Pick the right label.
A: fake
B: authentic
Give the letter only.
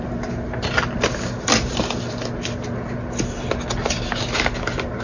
B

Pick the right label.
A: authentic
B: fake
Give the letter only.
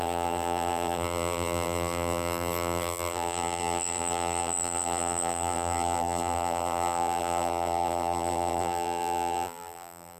B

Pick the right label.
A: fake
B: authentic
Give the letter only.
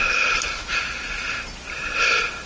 B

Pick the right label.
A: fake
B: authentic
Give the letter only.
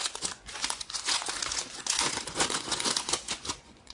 A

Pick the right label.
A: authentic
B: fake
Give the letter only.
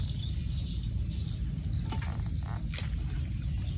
A